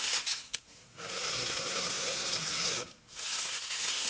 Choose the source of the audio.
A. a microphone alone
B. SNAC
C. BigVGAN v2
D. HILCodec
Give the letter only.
B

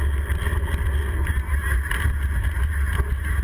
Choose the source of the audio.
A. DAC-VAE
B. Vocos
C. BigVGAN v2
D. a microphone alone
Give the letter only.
D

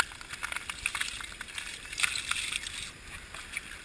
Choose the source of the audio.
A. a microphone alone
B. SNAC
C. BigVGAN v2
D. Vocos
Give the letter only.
A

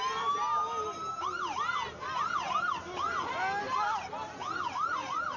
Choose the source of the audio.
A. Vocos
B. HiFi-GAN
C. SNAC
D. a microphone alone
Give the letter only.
D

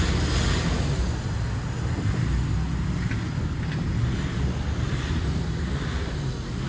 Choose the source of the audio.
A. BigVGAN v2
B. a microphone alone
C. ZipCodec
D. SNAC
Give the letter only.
B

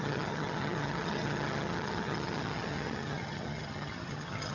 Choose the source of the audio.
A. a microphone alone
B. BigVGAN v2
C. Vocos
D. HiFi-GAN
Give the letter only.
D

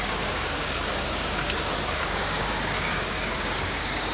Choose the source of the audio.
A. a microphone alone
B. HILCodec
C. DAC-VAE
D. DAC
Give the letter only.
D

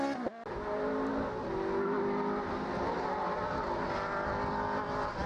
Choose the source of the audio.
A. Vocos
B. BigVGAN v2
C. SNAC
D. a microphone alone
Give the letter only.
D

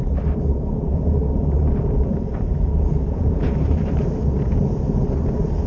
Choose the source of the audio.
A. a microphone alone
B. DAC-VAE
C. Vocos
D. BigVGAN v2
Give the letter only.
D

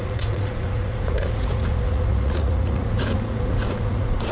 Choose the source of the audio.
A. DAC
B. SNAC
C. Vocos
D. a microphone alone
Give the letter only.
C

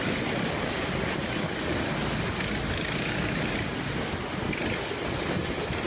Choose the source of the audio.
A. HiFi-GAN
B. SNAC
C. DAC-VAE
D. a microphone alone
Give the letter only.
D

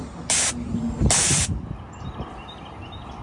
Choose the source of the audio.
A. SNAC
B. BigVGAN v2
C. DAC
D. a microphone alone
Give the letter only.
D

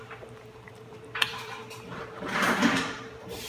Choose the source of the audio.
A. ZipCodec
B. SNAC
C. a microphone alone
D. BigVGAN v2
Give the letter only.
D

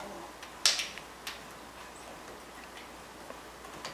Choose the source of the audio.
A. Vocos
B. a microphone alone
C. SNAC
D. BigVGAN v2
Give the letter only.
B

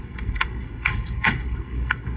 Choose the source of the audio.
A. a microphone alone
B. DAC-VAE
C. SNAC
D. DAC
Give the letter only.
C